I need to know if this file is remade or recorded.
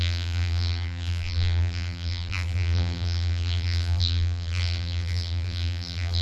remade